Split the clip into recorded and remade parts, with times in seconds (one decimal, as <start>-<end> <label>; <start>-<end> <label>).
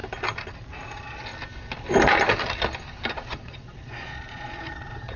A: 0.0-0.9 recorded; 0.9-1.3 remade; 1.3-3.1 recorded; 3.1-5.2 remade